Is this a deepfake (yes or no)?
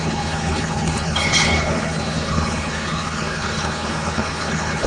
yes